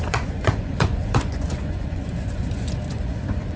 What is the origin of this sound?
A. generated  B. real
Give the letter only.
A